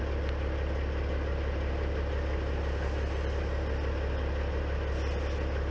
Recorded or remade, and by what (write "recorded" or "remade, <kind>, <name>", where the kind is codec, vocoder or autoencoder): recorded